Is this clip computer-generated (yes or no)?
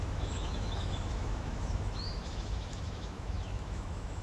yes